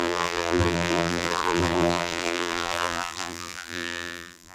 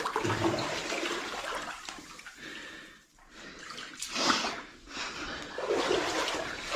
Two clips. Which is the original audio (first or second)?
second